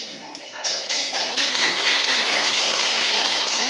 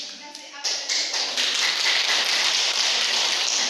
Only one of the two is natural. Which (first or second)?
second